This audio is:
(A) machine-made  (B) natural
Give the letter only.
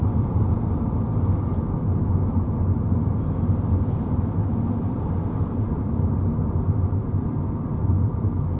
B